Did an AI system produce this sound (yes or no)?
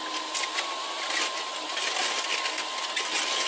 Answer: no